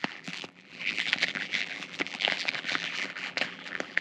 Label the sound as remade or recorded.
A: remade